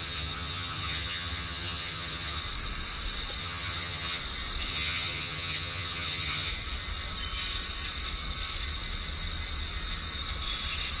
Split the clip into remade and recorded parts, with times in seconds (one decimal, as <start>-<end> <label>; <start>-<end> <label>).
0.0-2.4 remade; 2.4-3.4 recorded; 3.4-4.2 remade; 4.2-4.7 recorded; 4.7-6.5 remade; 6.5-11.0 recorded